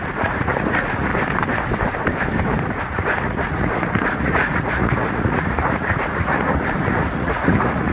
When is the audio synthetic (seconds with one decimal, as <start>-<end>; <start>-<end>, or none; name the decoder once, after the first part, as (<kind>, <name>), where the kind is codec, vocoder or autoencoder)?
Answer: 0.0-1.1 (vocoder, Vocos); 2.8-7.9